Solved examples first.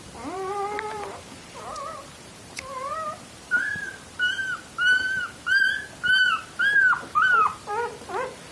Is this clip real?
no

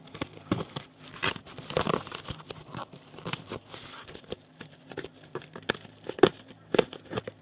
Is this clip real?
no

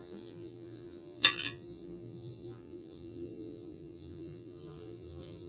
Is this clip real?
no